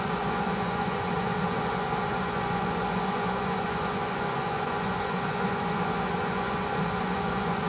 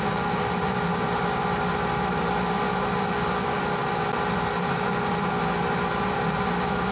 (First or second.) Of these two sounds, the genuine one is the second